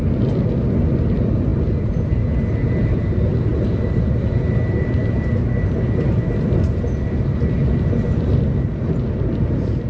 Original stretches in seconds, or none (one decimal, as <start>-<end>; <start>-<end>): 0.0-9.9